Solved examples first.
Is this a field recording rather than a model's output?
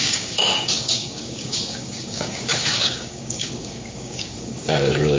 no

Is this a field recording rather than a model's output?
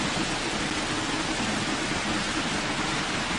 yes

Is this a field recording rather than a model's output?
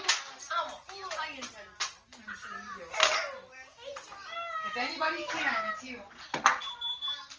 yes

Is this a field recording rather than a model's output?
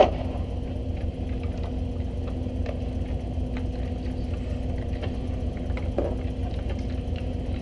yes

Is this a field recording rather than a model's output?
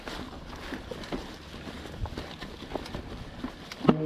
yes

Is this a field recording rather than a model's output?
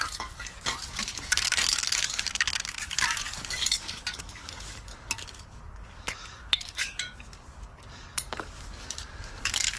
no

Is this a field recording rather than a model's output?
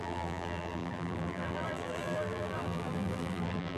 no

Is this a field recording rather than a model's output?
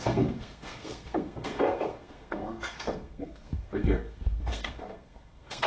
no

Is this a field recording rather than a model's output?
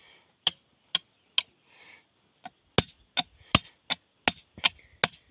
yes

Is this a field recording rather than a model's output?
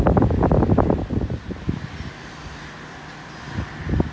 yes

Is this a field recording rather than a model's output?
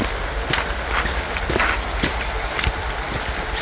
yes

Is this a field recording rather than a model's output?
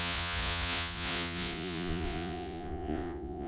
no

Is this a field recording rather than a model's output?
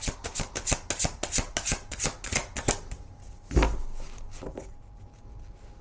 yes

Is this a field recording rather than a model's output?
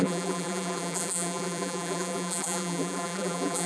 no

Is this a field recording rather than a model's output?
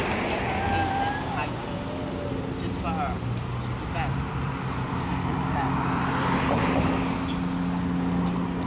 yes